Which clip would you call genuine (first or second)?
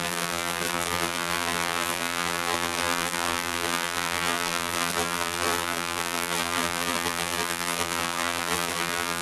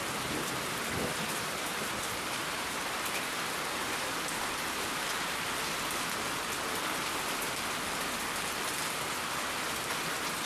second